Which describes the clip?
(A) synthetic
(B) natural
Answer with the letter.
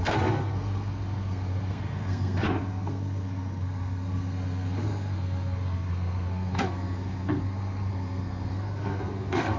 A